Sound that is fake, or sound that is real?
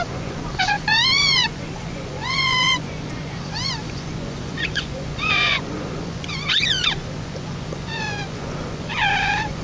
fake